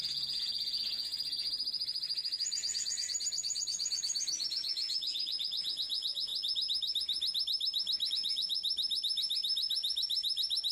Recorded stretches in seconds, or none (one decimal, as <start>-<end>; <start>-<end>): 1.1-4.5; 6.3-8.1; 8.6-10.7